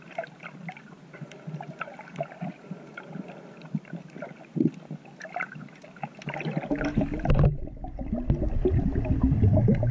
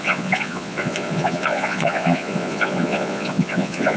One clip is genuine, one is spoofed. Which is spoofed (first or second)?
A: second